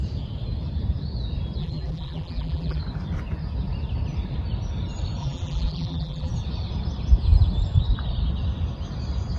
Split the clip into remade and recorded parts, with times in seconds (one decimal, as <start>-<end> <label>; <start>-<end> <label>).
0.0-1.6 recorded; 1.6-2.8 remade; 2.8-5.2 recorded; 5.2-6.3 remade; 6.3-9.4 recorded